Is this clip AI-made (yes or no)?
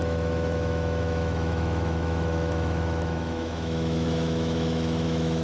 yes